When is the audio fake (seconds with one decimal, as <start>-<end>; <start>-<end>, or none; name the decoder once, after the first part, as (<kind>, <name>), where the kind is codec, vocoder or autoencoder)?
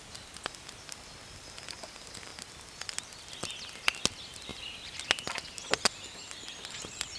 none